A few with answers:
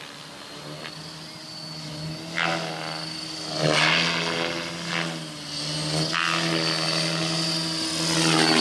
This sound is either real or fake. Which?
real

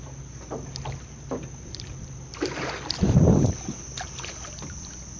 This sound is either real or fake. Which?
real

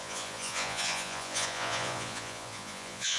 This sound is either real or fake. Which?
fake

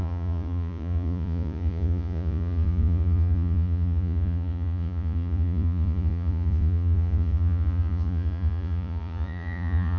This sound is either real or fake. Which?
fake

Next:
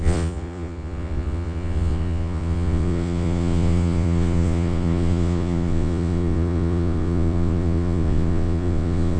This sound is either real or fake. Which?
fake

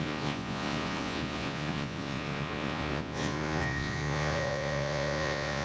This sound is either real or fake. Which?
fake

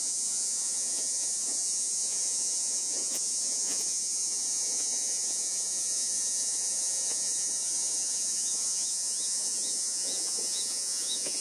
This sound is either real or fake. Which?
fake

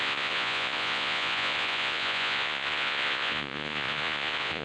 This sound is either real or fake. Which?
fake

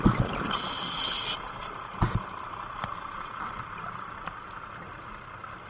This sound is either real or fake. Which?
real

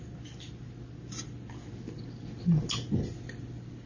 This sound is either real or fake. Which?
real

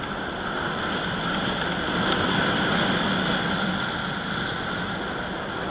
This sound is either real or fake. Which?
real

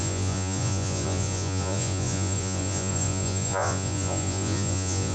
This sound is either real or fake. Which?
fake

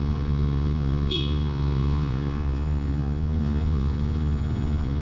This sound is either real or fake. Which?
fake